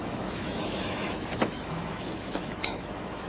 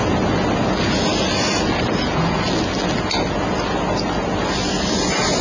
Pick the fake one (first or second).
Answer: first